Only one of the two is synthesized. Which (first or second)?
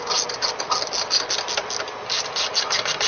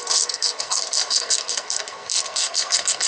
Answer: second